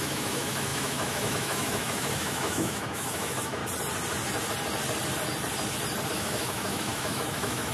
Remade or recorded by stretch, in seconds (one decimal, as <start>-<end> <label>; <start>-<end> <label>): 0.0-3.6 remade; 3.6-6.1 recorded; 6.1-7.7 remade